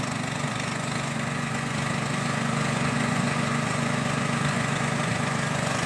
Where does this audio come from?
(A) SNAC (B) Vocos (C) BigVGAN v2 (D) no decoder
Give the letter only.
B